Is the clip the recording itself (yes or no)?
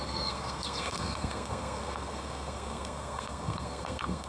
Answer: no